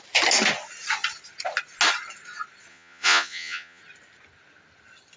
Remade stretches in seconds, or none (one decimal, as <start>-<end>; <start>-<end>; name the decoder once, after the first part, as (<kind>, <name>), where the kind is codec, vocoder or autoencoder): 2.7-3.8 (vocoder, Vocos)